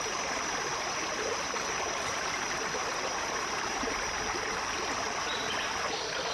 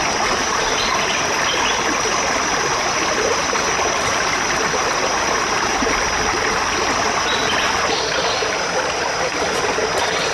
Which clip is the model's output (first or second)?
first